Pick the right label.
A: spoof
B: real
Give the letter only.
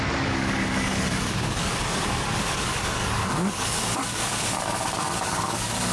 A